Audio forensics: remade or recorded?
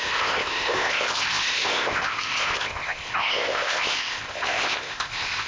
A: remade